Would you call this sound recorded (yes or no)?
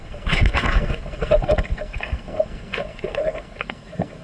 no